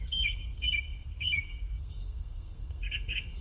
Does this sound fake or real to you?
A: fake